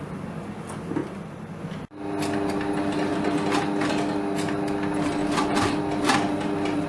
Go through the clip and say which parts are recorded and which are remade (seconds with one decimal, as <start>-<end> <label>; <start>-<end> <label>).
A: 0.0-6.9 recorded